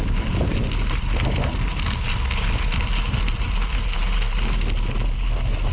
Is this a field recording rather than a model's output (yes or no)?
yes